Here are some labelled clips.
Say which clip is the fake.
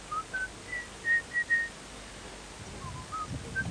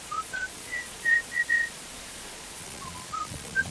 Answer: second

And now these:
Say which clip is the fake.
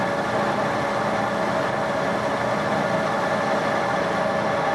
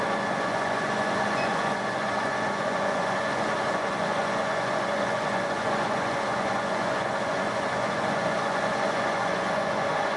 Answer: second